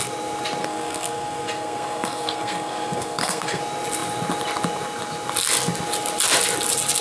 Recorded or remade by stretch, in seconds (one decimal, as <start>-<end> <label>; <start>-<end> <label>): 0.0-0.6 recorded; 0.6-3.6 remade; 3.6-7.0 recorded